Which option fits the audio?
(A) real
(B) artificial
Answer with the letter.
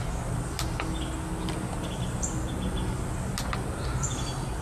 A